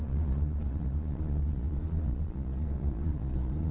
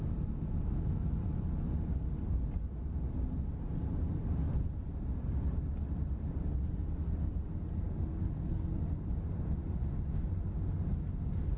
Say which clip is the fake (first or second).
first